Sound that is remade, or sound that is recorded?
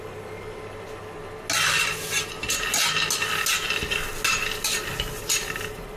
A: recorded